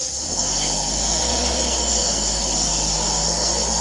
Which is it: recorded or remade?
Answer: remade